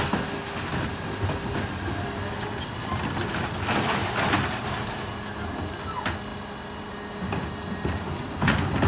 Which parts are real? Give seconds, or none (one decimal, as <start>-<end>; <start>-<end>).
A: 0.0-8.9